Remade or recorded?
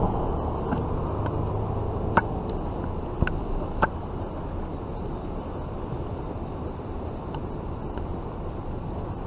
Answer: recorded